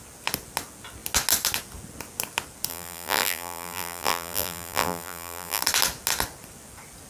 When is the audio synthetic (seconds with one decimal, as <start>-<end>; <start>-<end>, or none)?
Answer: 2.7-5.6